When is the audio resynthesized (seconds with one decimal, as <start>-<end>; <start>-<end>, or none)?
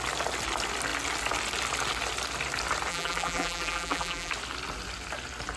2.9-4.3